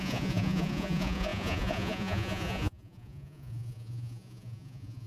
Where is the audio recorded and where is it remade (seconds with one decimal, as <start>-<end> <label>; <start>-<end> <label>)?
0.0-5.1 remade